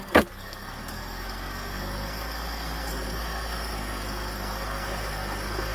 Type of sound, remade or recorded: remade